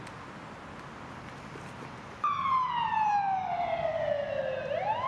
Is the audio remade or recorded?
recorded